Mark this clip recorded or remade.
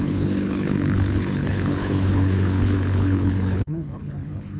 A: remade